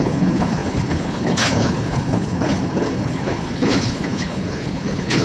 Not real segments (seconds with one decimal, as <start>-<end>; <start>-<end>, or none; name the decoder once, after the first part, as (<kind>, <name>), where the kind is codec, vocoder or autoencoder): 0.0-5.2 (codec, HILCodec)